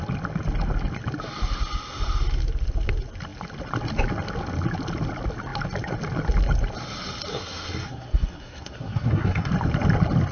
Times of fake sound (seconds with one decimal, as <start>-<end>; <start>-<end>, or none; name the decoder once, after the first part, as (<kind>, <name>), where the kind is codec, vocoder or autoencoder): 7.3-9.5 (codec, SNAC)